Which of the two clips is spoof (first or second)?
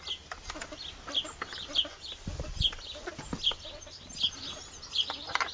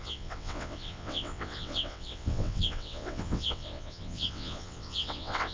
second